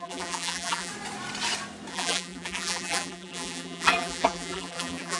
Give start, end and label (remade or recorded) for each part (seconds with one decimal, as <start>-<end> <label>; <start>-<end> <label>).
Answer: 0.0-0.9 remade; 0.9-1.9 recorded; 1.9-5.2 remade